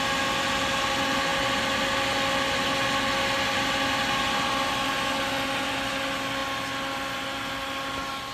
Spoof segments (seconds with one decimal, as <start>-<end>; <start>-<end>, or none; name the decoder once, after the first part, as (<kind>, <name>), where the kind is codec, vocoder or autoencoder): none